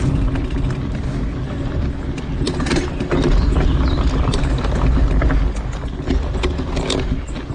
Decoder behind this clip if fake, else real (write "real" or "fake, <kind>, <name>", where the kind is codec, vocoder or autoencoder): real